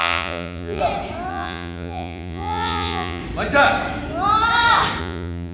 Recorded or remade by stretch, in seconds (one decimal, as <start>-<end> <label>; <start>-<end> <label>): 0.0-0.8 remade; 0.8-1.3 recorded; 1.3-3.2 remade; 3.2-5.0 recorded; 5.0-5.5 remade